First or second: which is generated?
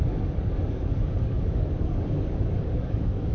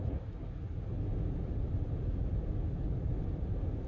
first